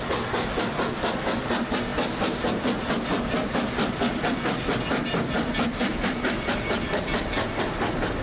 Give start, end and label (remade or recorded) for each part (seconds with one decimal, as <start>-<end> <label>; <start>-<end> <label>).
0.0-8.2 recorded

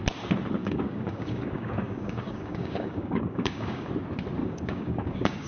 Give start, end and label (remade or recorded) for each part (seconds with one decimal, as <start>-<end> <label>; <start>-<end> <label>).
0.0-0.6 recorded; 0.6-3.9 remade; 3.9-4.4 recorded; 4.4-5.5 remade

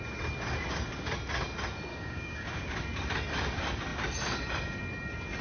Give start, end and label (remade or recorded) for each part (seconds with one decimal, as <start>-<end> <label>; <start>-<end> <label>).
0.0-1.9 recorded; 1.9-2.8 remade; 2.8-5.4 recorded